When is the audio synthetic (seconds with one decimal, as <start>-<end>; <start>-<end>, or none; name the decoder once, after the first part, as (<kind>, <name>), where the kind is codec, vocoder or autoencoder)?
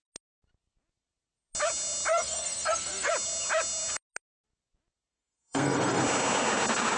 2.1-3.1 (codec, SNAC); 5.1-6.0